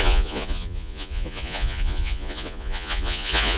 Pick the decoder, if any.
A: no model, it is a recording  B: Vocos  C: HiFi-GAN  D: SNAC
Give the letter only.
B